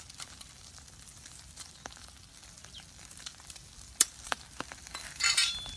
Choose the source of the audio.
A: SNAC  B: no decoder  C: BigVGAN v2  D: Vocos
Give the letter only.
C